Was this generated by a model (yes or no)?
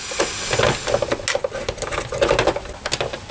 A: no